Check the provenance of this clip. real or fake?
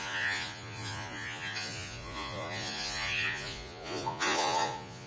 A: fake